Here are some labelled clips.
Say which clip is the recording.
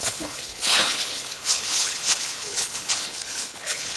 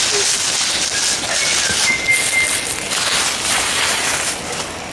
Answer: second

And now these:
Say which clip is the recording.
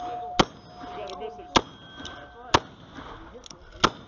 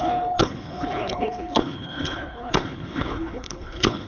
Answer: first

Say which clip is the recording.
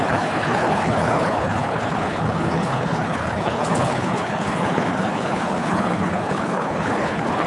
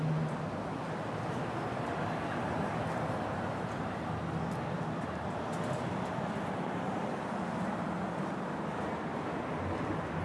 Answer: second